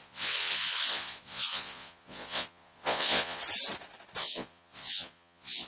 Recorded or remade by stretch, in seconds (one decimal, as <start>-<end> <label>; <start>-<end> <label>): 0.0-3.4 remade; 3.4-4.2 recorded; 4.2-5.7 remade